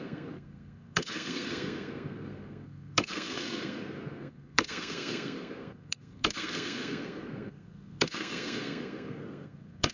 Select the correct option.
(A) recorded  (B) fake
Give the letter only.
B